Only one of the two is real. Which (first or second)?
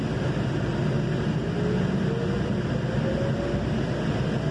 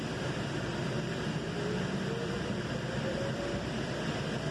first